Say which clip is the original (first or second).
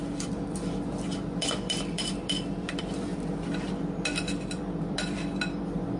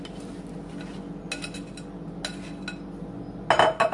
second